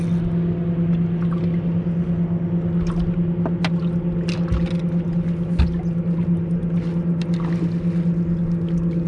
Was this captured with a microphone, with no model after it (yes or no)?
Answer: yes